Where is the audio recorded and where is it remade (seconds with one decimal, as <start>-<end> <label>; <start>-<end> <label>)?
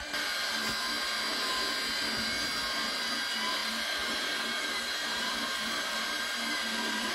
0.0-3.6 recorded; 3.6-7.1 remade